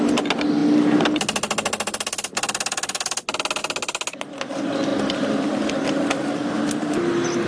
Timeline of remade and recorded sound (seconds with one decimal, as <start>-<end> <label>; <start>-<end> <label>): 0.0-7.5 recorded